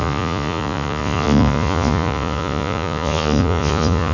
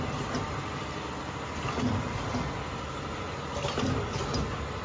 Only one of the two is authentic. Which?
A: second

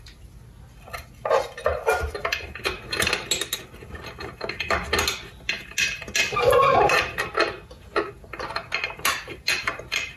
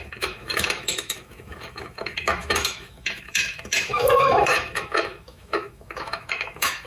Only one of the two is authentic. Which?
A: first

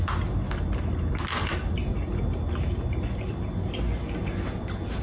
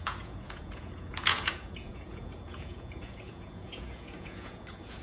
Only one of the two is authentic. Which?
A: first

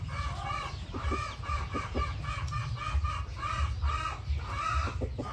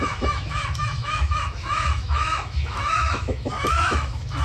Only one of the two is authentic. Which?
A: first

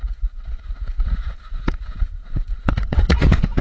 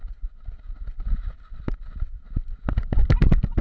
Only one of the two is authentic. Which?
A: second